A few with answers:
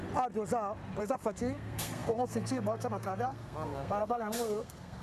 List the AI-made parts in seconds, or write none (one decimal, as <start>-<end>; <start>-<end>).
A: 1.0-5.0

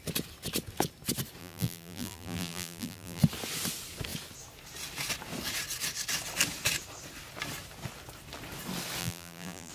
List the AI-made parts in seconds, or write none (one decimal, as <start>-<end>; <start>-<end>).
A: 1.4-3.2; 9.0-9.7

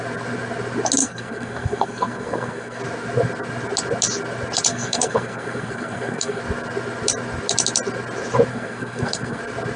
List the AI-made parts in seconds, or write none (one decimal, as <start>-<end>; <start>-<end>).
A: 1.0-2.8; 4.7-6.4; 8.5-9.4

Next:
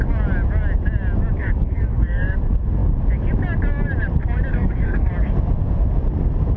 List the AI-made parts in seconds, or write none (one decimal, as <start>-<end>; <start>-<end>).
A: 1.4-2.4; 4.5-5.1

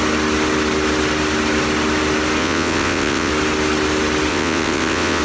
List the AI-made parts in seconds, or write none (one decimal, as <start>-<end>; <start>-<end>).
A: 2.4-3.3; 4.3-5.2